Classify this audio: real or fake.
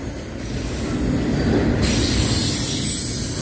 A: real